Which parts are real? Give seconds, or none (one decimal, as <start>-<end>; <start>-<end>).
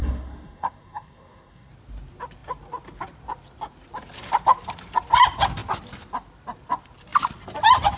1.7-8.0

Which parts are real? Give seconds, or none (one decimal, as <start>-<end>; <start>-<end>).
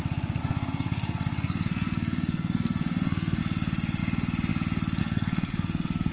0.0-0.4; 3.4-5.0